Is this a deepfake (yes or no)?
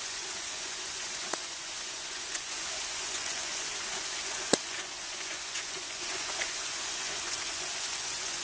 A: yes